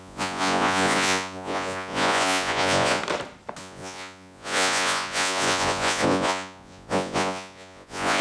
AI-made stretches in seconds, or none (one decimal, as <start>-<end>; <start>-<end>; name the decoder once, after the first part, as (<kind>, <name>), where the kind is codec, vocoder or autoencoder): 0.0-3.0 (vocoder, Vocos); 3.6-8.2